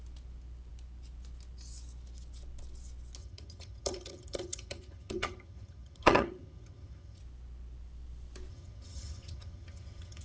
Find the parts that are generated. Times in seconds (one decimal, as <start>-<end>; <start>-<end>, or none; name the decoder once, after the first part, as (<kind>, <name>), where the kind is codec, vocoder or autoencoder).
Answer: 3.2-7.2 (vocoder, HiFi-GAN); 8.5-10.2

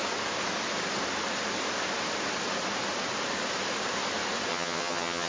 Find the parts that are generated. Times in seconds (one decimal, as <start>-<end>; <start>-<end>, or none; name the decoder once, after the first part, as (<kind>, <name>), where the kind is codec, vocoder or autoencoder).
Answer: 4.5-5.3 (vocoder, HiFi-GAN)

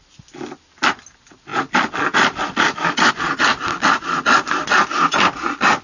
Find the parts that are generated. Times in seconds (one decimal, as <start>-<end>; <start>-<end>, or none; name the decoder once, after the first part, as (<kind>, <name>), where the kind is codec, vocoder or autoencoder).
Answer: none

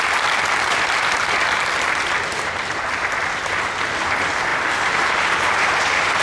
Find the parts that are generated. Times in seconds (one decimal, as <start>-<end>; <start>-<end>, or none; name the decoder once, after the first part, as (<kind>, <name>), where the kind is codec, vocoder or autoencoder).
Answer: none

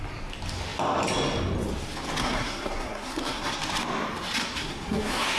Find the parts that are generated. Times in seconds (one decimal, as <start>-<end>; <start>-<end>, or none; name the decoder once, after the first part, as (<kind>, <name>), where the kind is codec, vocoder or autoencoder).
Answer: 2.2-3.6 (codec, SNAC); 4.4-5.4

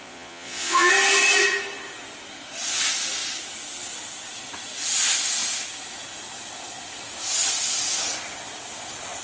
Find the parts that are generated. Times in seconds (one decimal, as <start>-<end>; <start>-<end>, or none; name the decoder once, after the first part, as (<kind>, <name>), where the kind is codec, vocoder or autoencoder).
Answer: 0.0-0.9 (vocoder, Vocos)